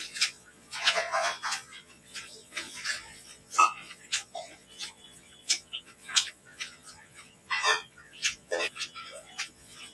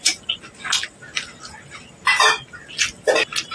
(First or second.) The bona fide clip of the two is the second